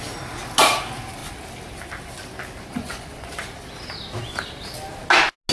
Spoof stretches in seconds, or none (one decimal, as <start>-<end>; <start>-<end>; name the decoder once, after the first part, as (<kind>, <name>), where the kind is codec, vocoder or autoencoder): 2.7-3.3 (vocoder, Vocos)